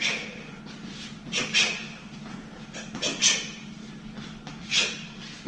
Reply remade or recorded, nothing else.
recorded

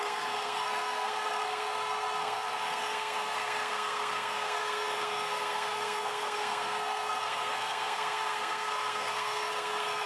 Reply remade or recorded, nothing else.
remade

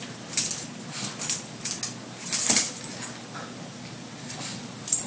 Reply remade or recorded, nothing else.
recorded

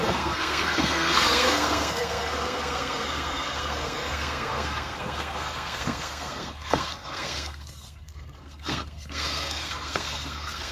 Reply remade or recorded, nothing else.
remade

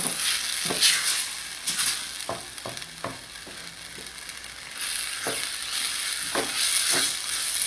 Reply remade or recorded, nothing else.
recorded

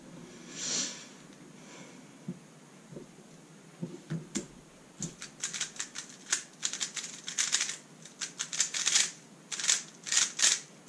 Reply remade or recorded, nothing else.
recorded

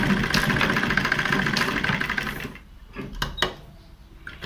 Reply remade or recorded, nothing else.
recorded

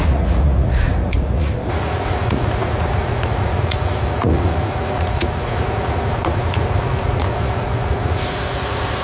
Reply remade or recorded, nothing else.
remade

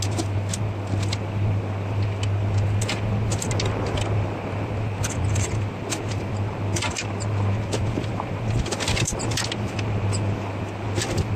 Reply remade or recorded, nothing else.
recorded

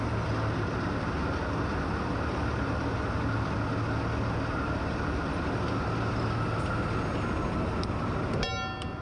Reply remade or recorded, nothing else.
recorded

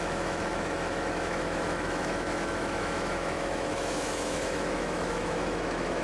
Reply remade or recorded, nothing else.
remade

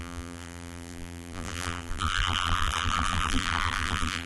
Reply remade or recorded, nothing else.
remade